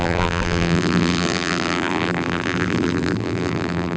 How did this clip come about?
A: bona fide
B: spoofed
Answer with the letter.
B